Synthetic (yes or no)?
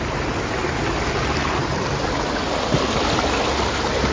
no